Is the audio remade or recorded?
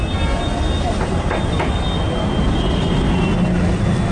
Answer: recorded